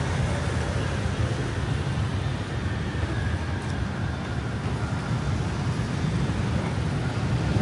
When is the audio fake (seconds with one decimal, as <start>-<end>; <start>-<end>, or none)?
none